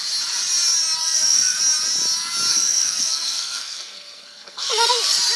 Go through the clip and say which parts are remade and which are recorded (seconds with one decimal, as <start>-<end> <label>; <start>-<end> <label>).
0.0-1.0 recorded; 1.0-1.6 remade; 1.6-2.5 recorded; 2.5-4.9 remade; 4.9-5.4 recorded

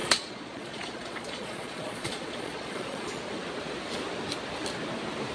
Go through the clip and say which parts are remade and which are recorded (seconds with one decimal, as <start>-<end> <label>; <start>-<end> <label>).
0.0-3.2 remade; 3.2-5.3 recorded

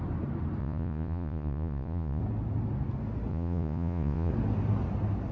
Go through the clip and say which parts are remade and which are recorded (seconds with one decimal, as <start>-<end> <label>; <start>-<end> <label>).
0.0-0.6 recorded; 0.6-2.2 remade; 2.2-3.3 recorded; 3.3-4.3 remade; 4.3-5.3 recorded

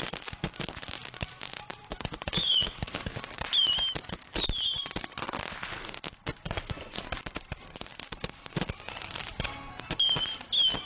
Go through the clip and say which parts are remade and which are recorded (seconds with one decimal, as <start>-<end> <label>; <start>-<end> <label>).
0.0-1.7 recorded; 1.7-3.1 remade; 3.1-6.3 recorded; 6.3-7.0 remade; 7.0-10.9 recorded

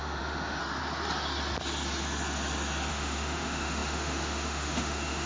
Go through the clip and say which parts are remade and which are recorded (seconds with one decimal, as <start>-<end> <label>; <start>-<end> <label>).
0.0-0.6 remade; 0.6-2.9 recorded; 2.9-5.3 remade

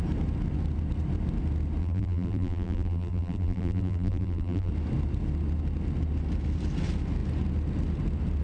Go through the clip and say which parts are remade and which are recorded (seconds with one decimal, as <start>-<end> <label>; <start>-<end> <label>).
0.0-1.8 recorded; 1.8-4.7 remade; 4.7-8.4 recorded

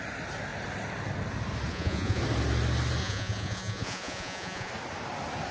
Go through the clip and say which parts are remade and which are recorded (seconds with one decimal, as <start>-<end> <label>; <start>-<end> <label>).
0.0-1.7 recorded; 1.7-2.2 remade; 2.2-3.0 recorded; 3.0-4.7 remade; 4.7-5.5 recorded

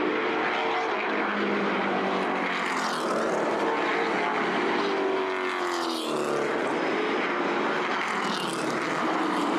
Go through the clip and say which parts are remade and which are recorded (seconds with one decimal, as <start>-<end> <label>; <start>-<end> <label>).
0.0-9.6 recorded